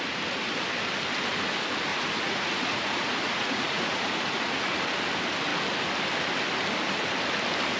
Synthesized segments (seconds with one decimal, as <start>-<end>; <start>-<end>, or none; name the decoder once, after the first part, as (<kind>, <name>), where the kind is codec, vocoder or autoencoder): 1.9-4.8 (vocoder, Vocos)